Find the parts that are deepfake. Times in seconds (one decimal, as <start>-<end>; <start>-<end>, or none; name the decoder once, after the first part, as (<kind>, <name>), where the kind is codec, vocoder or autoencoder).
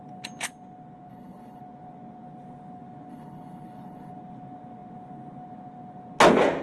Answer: 1.1-1.6 (codec, HILCodec); 3.1-4.1